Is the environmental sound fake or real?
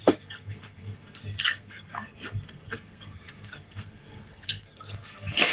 fake